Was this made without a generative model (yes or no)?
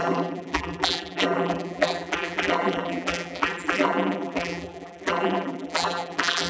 no